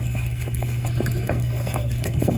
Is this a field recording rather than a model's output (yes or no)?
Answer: no